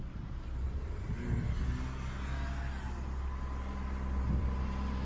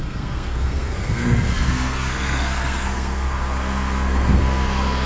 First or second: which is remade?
second